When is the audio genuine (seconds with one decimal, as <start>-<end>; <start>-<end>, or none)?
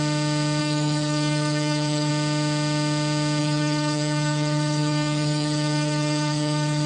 0.0-0.6; 2.1-3.4